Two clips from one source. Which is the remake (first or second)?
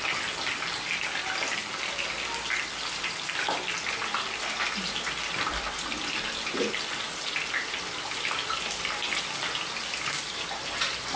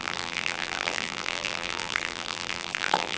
second